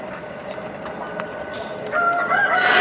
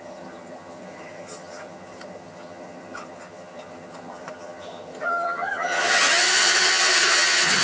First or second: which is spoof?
second